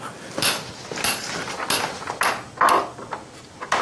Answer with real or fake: real